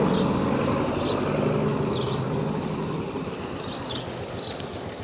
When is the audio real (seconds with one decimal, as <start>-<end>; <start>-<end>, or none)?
0.0-5.0